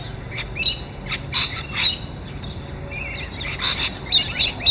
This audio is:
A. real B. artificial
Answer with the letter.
A